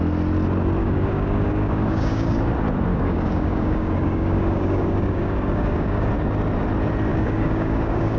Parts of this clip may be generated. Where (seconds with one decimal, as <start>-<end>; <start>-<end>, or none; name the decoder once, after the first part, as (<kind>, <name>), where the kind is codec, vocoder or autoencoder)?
0.8-2.5 (codec, DAC); 2.9-6.1; 7.1-8.2